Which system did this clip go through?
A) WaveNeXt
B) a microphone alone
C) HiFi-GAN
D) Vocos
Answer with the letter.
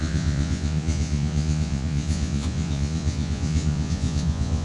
D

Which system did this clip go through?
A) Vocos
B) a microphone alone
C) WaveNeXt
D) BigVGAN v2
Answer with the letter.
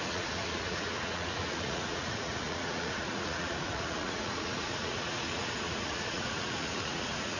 A